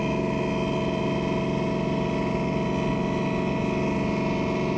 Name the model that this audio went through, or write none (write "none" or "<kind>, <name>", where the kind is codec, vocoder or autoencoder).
none